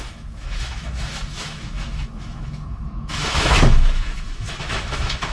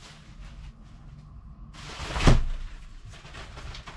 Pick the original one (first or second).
second